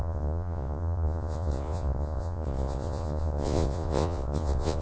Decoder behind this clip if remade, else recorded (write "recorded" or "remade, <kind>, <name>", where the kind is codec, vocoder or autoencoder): remade, vocoder, Vocos